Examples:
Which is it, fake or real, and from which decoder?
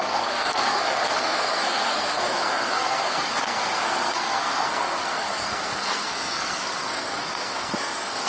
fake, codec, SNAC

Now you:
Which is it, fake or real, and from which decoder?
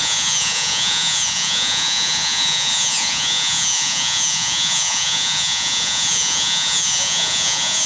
fake, vocoder, Vocos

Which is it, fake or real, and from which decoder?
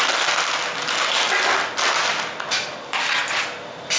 real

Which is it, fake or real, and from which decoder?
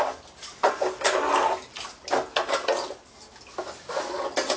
real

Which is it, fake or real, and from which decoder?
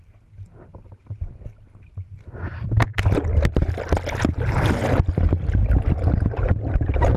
real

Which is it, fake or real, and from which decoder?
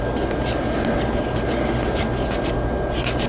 real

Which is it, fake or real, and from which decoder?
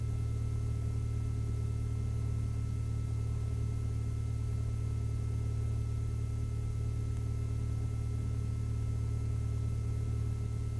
real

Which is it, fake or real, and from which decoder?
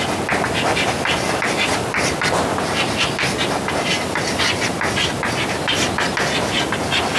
real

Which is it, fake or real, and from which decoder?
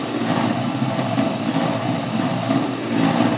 real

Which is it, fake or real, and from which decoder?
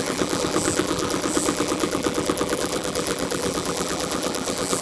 fake, vocoder, BigVGAN v2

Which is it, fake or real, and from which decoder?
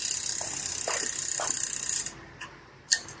real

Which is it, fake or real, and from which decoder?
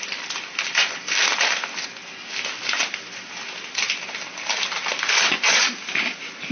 real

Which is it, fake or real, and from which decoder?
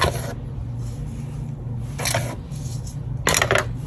real